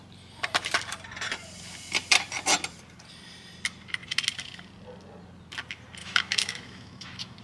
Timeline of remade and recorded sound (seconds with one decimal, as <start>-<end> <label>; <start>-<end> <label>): 0.0-6.0 recorded; 6.0-7.4 remade